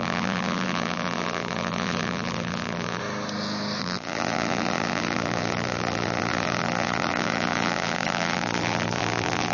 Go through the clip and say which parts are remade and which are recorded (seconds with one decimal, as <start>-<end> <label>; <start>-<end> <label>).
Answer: 0.0-3.0 remade; 3.0-3.8 recorded; 3.8-9.5 remade